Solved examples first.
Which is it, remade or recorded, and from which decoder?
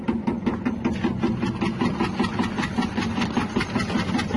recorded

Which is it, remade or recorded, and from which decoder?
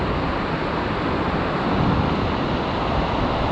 recorded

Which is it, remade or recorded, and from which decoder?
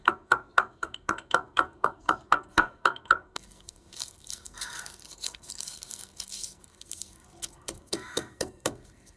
remade, codec, SNAC